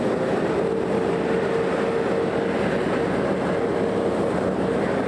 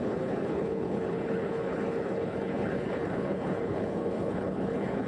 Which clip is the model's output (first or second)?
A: second